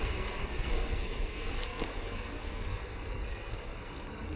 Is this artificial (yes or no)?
yes